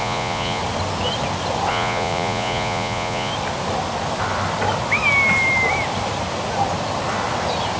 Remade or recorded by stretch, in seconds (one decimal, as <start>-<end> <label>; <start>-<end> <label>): 0.0-0.6 remade; 0.6-1.7 recorded; 1.7-3.3 remade; 3.3-7.8 recorded